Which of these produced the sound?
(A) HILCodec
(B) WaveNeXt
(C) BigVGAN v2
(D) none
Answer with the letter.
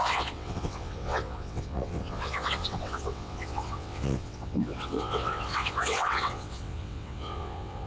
B